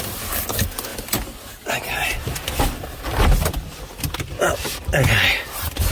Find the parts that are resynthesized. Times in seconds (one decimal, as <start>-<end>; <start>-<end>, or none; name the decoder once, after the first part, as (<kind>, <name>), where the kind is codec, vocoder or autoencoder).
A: 0.0-5.9 (vocoder, BigVGAN v2)